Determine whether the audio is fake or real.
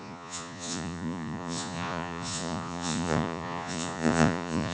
fake